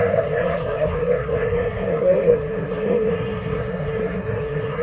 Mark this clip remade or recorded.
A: remade